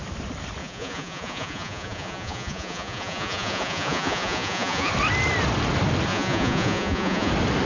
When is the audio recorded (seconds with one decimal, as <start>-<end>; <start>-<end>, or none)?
0.0-0.6; 4.9-6.1; 7.3-7.7